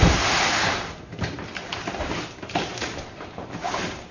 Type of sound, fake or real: fake